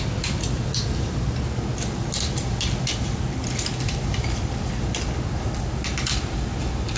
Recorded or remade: recorded